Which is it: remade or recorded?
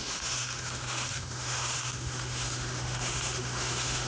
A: remade